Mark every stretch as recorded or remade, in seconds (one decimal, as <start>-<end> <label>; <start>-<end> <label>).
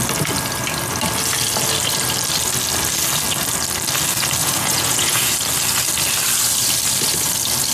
0.0-4.4 recorded; 4.4-5.3 remade; 5.3-7.7 recorded